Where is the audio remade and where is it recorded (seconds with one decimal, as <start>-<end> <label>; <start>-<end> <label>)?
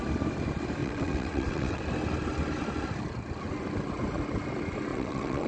0.0-0.8 recorded; 0.8-1.8 remade; 1.8-4.9 recorded; 4.9-5.5 remade